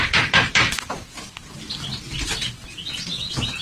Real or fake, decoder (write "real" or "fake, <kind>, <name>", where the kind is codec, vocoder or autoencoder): real